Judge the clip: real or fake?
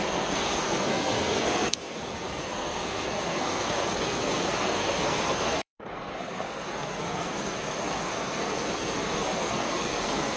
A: fake